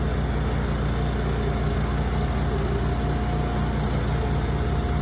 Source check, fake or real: real